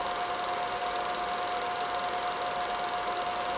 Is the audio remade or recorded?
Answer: recorded